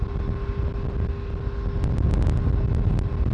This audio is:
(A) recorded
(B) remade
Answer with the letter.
A